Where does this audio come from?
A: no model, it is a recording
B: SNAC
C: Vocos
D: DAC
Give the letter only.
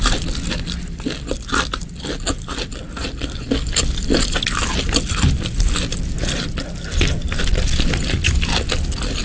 A